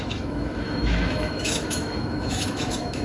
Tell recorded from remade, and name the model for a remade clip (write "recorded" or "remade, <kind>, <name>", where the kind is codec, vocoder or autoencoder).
remade, autoencoder, DAC-VAE